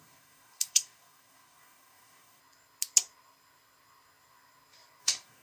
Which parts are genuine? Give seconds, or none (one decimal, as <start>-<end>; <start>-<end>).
2.4-5.0